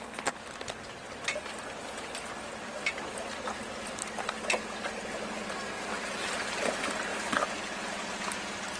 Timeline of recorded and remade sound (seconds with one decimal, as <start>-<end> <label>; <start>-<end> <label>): 0.0-8.8 recorded